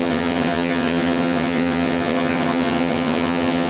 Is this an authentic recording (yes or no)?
no